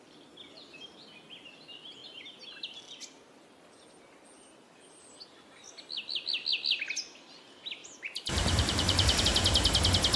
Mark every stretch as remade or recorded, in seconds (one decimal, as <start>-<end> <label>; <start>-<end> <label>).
0.0-7.8 recorded; 7.8-9.2 remade; 9.2-10.2 recorded